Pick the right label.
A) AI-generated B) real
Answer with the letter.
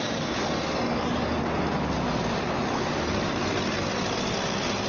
B